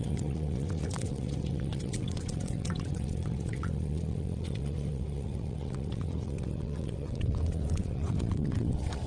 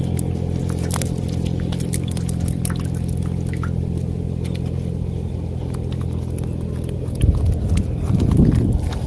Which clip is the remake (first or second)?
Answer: first